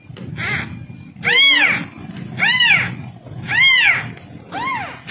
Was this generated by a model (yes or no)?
no